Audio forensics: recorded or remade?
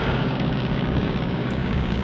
remade